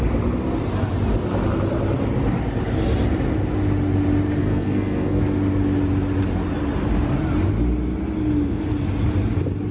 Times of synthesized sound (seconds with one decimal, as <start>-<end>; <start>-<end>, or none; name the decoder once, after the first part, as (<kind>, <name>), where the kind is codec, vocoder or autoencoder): 4.4-5.2 (codec, SNAC)